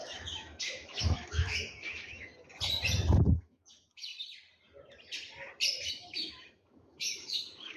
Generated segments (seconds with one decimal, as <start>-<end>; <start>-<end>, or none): 0.0-2.3; 3.3-4.1; 5.9-7.8